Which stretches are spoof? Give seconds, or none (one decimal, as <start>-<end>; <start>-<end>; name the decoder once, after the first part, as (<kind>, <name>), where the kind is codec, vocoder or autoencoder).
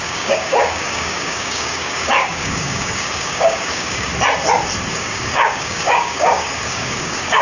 0.0-4.1 (codec, DAC); 4.9-7.4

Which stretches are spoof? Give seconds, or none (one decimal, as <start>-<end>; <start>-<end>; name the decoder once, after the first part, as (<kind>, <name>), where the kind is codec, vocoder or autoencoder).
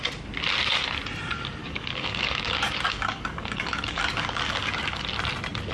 1.6-5.0 (codec, DAC)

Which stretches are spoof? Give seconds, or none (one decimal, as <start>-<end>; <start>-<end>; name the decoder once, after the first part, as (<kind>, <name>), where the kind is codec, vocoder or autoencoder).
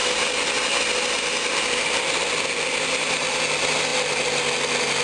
none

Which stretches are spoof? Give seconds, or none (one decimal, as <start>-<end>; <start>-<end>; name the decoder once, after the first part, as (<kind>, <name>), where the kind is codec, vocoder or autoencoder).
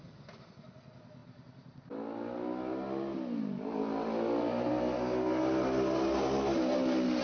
none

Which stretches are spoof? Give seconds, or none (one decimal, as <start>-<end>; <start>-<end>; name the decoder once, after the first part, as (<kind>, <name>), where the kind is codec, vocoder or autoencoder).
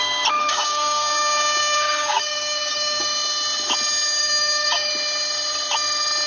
0.4-3.0 (codec, DAC); 4.2-4.9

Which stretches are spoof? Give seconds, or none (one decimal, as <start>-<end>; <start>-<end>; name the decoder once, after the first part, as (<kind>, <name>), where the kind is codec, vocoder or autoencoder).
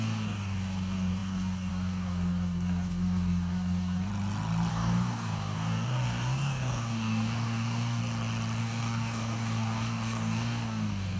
0.0-4.1 (codec, DAC); 4.7-8.0; 8.6-11.2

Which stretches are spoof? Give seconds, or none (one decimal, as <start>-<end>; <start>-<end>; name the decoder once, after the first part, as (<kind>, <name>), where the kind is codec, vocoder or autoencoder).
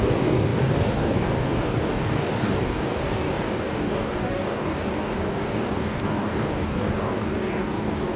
0.0-8.2 (codec, DAC)